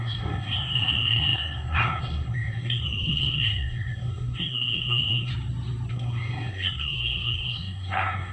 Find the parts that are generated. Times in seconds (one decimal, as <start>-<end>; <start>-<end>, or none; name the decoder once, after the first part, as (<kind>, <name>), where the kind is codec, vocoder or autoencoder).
0.0-5.3 (codec, SNAC); 5.9-8.3